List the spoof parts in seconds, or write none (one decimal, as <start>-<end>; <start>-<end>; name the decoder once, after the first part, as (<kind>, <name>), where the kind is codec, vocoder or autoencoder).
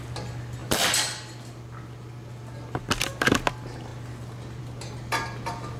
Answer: 0.6-3.1 (vocoder, BigVGAN v2)